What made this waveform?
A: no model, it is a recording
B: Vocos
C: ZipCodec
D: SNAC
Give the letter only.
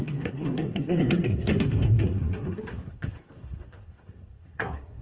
D